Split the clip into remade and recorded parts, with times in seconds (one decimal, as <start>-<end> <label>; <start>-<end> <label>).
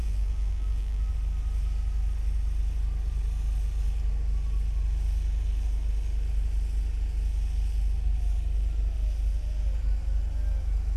0.0-1.1 remade; 1.1-11.0 recorded